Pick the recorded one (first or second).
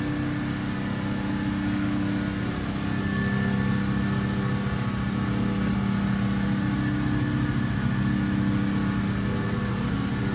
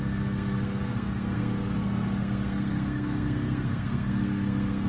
first